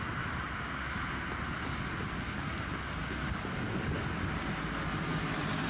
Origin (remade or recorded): recorded